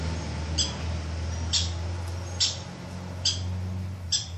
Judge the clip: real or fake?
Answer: real